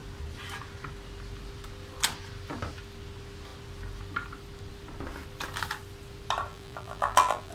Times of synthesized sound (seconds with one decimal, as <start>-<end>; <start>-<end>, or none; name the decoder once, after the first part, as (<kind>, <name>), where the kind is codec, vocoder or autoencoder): 6.5-7.5 (vocoder, BigVGAN v2)